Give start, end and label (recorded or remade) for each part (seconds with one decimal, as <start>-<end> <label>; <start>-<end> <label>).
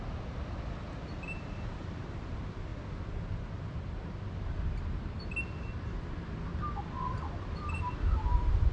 0.0-8.7 recorded